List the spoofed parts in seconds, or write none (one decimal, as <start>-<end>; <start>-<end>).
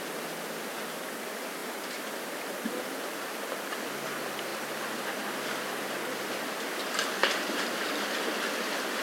7.2-7.9